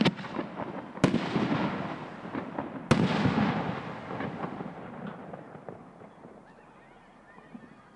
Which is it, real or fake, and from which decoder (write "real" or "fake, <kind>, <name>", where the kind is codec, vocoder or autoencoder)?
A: real